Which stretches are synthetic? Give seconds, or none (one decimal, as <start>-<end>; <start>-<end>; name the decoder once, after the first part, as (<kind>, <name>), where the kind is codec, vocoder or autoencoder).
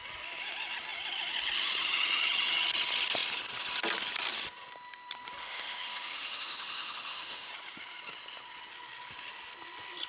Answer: 5.4-7.5 (autoencoder, DAC-VAE)